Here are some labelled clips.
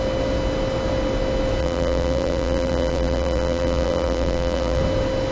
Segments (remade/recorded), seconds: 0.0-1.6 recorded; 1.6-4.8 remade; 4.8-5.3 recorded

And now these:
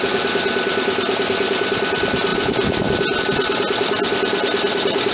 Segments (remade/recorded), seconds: 0.0-5.1 recorded

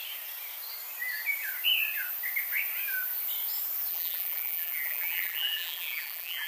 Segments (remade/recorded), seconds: 0.0-3.9 recorded; 3.9-6.5 remade

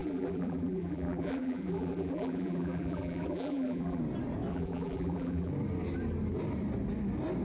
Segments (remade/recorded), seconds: 0.0-4.0 remade; 4.0-4.5 recorded; 4.5-5.5 remade; 5.5-7.4 recorded

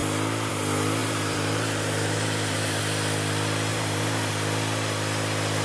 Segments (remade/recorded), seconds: 0.0-1.0 recorded; 1.0-2.8 remade; 2.8-3.7 recorded; 3.7-4.3 remade; 4.3-5.6 recorded